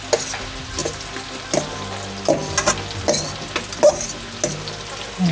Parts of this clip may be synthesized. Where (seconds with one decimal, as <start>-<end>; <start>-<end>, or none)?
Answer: none